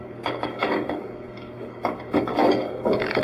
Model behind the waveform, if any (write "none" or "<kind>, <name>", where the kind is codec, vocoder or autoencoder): codec, DAC